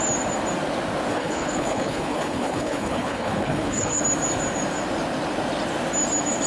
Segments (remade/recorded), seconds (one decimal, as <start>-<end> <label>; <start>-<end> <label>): 0.0-1.1 recorded; 1.1-4.0 remade; 4.0-6.5 recorded

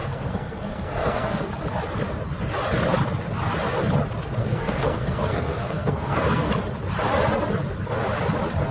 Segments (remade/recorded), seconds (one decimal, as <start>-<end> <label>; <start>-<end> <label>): 0.0-1.6 remade; 1.6-4.4 recorded; 4.4-6.5 remade; 6.5-8.7 recorded

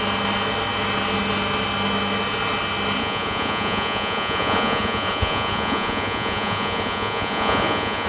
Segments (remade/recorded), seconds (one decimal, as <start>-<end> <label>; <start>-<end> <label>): 0.0-3.0 recorded; 3.0-8.1 remade

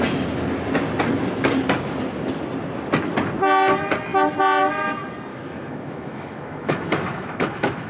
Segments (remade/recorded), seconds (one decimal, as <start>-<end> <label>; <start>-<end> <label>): 0.0-5.3 recorded; 5.3-7.9 remade